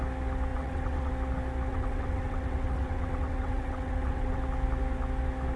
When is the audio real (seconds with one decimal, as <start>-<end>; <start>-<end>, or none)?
0.0-0.5; 1.1-1.7; 4.4-5.6